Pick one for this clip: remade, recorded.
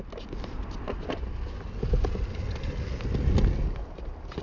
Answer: recorded